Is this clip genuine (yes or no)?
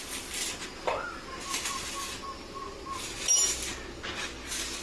yes